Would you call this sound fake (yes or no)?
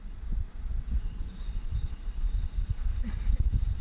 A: no